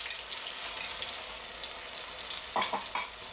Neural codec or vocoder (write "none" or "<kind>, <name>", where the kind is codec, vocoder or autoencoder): none